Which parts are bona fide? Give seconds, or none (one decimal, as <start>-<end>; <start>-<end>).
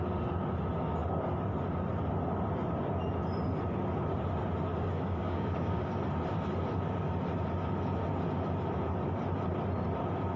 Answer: 0.0-4.7; 5.9-10.4